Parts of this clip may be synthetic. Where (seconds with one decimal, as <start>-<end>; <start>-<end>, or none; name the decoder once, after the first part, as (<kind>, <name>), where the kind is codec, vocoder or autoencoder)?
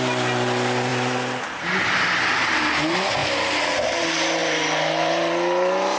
0.9-2.7 (vocoder, BigVGAN v2); 4.4-6.0